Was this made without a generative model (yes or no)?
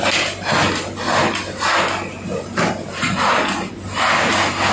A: yes